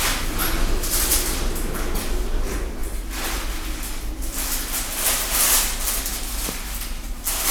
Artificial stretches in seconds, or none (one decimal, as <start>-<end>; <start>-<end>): none